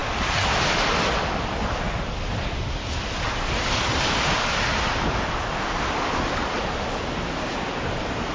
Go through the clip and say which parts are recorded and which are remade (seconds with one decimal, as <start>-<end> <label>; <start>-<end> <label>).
0.0-6.4 recorded; 6.4-7.1 remade; 7.1-8.3 recorded